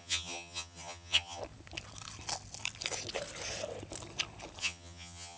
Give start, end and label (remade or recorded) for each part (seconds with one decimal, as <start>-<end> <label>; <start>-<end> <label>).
0.0-1.4 remade; 1.4-4.6 recorded; 4.6-5.4 remade